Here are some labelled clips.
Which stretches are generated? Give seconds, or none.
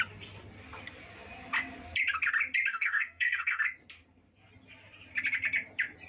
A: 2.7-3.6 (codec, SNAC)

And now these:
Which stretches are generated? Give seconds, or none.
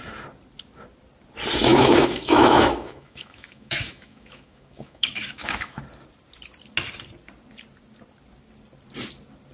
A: 1.7-5.8 (autoencoder, DAC-VAE)